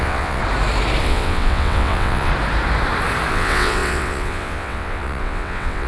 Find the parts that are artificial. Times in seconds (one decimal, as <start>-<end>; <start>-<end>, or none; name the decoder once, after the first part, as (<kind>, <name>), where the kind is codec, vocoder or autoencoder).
0.0-0.4 (vocoder, WaveNeXt); 1.0-2.3; 3.3-5.9